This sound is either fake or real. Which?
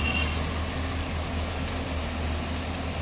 real